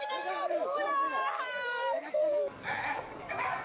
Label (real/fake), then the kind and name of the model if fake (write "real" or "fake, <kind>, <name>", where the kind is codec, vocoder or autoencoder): fake, codec, DAC